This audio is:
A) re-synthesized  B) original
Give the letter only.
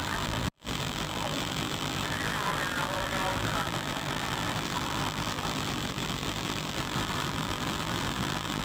A